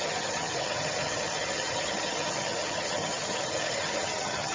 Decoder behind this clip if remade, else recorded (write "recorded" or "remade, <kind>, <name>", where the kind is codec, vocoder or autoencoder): remade, vocoder, HiFi-GAN